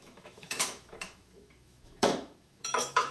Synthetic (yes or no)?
yes